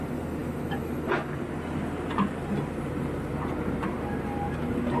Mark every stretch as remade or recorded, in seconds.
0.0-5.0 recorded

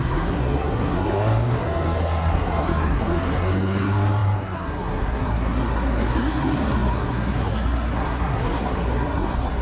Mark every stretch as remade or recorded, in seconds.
0.0-9.6 remade

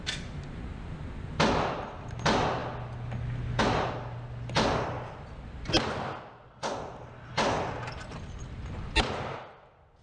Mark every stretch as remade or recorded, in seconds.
0.0-10.0 recorded

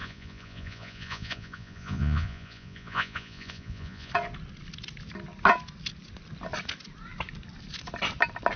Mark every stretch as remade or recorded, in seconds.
0.0-4.1 remade; 4.1-8.6 recorded

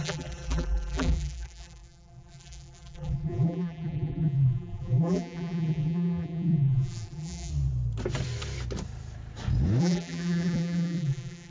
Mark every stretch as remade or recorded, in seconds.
0.0-7.5 remade; 7.5-9.8 recorded; 9.8-11.5 remade